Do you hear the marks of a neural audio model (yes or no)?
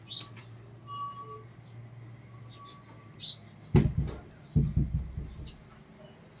no